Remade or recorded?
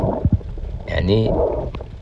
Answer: recorded